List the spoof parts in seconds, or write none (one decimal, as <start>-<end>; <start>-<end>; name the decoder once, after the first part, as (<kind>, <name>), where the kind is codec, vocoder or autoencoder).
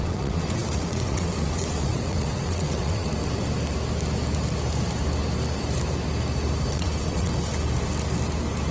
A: 0.0-3.1 (vocoder, WaveNeXt); 6.7-7.3